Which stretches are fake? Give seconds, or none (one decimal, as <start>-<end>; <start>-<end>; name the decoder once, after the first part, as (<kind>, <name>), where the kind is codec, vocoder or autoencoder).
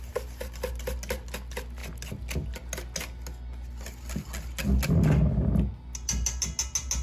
none